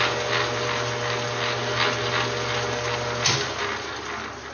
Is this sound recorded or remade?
recorded